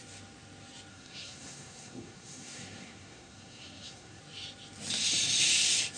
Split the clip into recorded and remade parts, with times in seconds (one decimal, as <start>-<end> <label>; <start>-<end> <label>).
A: 0.0-0.9 recorded; 0.9-4.2 remade; 4.2-6.0 recorded